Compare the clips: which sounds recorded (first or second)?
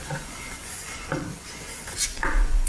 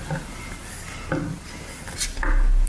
second